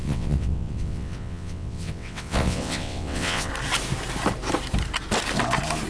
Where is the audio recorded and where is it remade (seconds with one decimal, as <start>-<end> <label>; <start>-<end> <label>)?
0.0-3.5 remade; 3.5-5.9 recorded